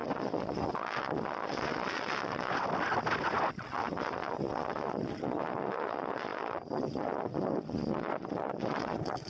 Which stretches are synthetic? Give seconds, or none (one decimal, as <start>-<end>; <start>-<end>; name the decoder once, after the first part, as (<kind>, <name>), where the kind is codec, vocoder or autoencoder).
0.0-2.5 (vocoder, Vocos); 3.5-9.3